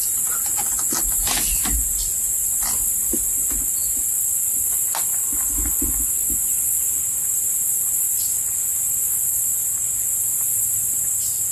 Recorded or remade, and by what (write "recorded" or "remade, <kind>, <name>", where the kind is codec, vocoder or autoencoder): recorded